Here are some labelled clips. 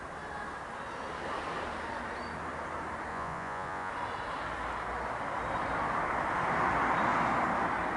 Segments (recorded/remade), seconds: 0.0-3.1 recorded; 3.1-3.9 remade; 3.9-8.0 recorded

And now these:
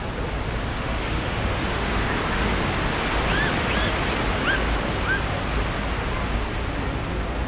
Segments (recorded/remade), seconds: 0.0-0.7 recorded; 0.7-2.1 remade; 2.1-7.5 recorded